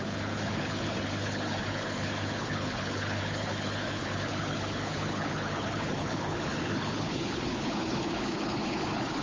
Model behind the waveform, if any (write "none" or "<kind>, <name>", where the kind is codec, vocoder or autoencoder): codec, HILCodec